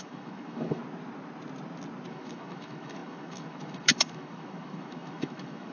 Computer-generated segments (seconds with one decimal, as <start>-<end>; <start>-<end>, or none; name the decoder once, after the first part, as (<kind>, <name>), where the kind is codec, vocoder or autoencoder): 0.0-0.8 (autoencoder, DAC-VAE); 2.1-5.7